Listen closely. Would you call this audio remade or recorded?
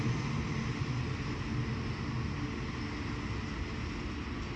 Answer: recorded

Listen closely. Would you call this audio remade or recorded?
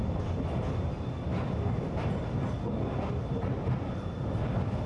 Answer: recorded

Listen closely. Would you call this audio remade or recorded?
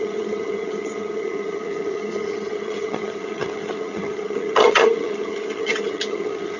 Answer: remade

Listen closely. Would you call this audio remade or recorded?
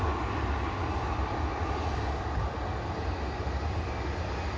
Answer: recorded